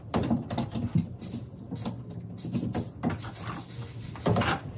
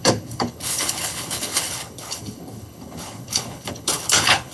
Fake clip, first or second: second